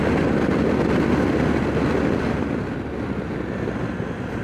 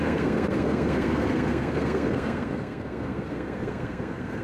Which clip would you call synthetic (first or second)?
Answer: second